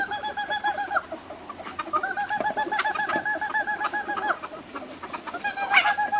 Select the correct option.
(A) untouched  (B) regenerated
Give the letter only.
A